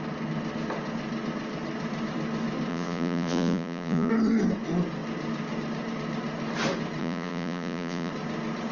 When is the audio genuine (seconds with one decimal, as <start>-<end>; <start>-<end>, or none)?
0.0-2.7; 4.1-7.0; 8.1-8.7